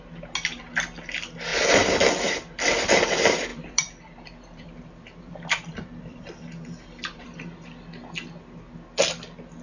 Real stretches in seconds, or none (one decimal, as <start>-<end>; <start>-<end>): 0.0-3.5; 7.4-9.6